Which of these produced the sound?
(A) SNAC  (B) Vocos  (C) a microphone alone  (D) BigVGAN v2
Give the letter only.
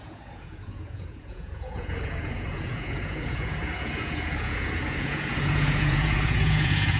B